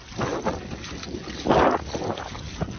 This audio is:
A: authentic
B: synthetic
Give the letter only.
A